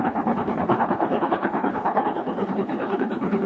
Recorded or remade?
remade